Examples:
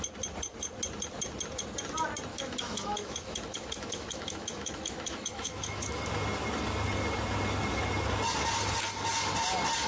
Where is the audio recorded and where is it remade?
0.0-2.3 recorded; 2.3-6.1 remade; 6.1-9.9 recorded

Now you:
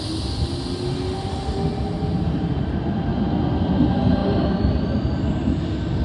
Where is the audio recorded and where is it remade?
0.0-6.0 recorded

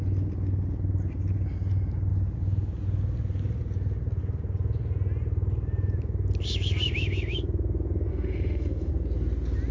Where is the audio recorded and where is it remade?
0.0-8.1 recorded; 8.1-8.9 remade; 8.9-9.7 recorded

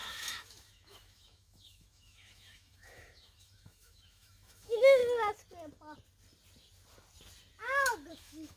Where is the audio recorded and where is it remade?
0.0-5.0 remade; 5.0-8.1 recorded; 8.1-8.6 remade

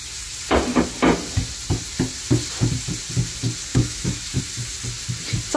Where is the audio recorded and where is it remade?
0.0-3.7 recorded; 3.7-4.4 remade; 4.4-5.6 recorded

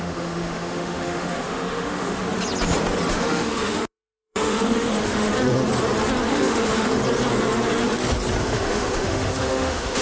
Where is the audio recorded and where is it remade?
0.0-2.2 remade; 2.2-3.1 recorded; 3.1-5.3 remade; 5.3-6.3 recorded; 6.3-7.0 remade; 7.0-8.4 recorded; 8.4-10.0 remade